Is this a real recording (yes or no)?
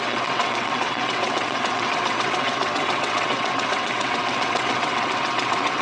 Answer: no